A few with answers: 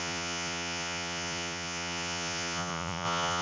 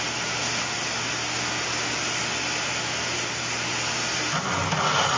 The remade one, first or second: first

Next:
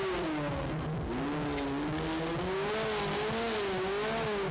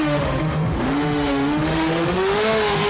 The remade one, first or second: second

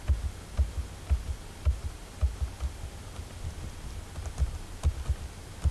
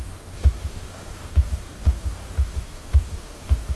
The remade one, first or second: second